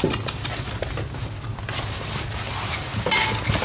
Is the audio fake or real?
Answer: real